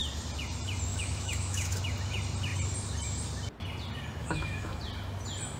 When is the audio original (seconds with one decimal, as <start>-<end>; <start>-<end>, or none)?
0.0-0.9; 1.8-4.2; 4.8-5.6